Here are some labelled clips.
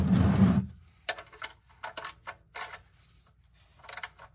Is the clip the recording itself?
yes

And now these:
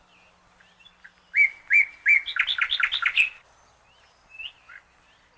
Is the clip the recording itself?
yes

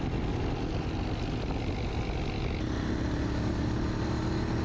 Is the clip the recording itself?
yes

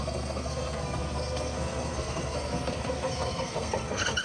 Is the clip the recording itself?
no